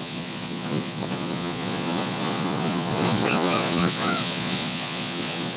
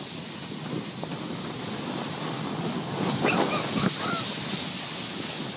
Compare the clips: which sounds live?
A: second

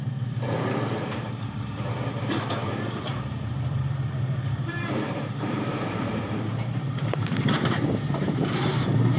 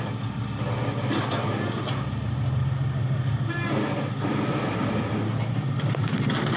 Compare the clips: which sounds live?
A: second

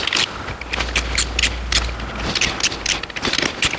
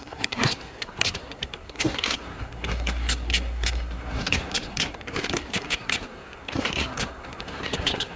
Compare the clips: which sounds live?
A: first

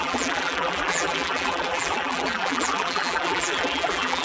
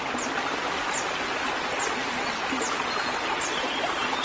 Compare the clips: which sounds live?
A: second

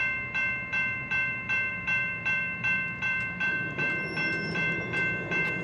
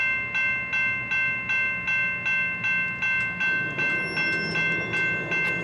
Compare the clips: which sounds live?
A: second